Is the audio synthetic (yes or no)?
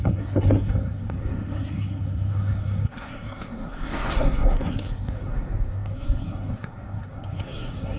yes